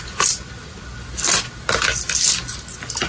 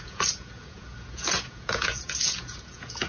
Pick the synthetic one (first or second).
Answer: second